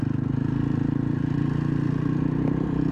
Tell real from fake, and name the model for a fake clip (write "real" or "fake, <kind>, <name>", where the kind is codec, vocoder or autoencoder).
real